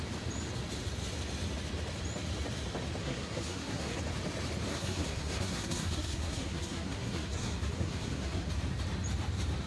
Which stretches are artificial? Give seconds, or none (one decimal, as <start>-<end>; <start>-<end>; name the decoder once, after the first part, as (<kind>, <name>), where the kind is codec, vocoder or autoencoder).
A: 3.0-4.0 (codec, SNAC); 4.7-8.5